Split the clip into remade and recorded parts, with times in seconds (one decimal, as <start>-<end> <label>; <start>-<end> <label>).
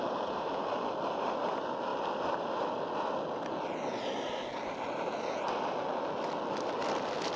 0.0-7.4 recorded